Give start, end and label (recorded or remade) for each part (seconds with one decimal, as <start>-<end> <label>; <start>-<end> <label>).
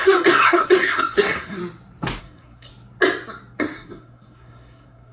0.0-1.6 remade; 1.6-2.2 recorded; 2.2-2.7 remade; 2.7-3.6 recorded; 3.6-5.1 remade